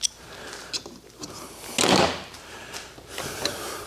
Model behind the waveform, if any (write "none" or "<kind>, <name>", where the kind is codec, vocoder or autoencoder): none